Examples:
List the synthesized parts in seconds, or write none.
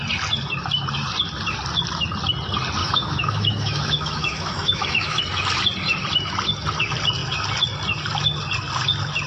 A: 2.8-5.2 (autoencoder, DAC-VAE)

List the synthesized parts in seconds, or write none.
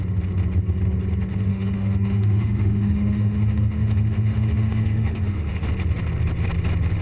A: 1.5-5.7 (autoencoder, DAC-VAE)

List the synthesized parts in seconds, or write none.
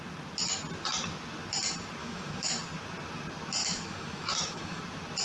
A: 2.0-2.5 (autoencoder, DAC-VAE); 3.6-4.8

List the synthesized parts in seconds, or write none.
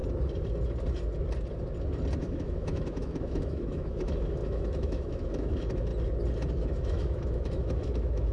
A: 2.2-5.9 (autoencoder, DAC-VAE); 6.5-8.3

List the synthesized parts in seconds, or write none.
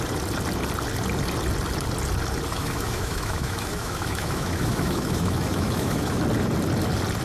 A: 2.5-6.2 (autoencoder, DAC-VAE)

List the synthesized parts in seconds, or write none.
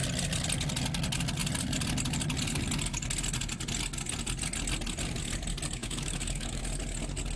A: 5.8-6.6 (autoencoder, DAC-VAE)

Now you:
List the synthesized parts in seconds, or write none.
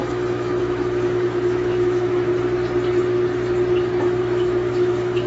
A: 0.0-2.3 (autoencoder, DAC-VAE); 4.2-5.3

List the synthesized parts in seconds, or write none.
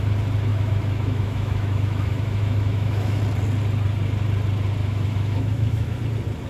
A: 0.5-3.2 (autoencoder, DAC-VAE); 4.8-6.0